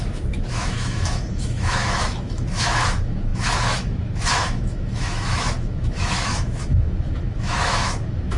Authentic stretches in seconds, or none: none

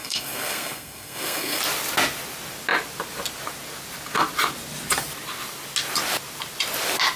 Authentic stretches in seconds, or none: 1.6-7.2

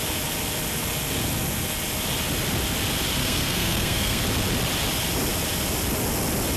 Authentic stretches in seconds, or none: 0.0-3.2; 4.2-6.6

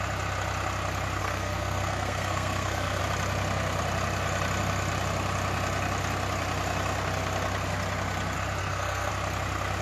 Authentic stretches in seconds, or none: 0.0-1.2; 3.0-8.6; 9.1-9.8

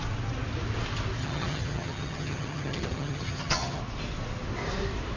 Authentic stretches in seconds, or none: 0.0-1.2; 3.8-5.2

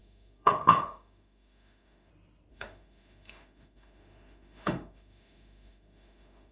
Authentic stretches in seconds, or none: 2.1-2.5

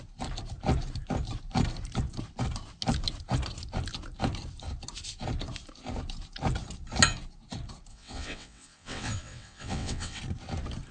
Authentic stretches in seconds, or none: 0.0-7.9; 10.2-10.9

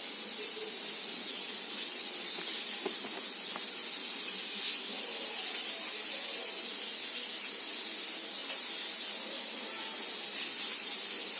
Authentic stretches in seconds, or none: 0.0-1.1; 2.4-11.4